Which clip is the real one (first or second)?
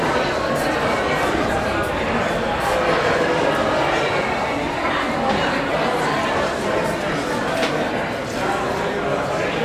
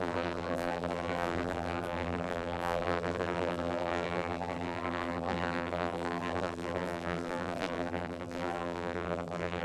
first